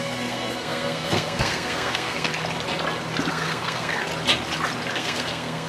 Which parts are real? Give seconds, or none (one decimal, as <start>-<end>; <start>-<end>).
2.3-3.3; 4.1-4.9